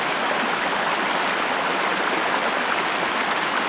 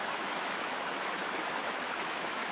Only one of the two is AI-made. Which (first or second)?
second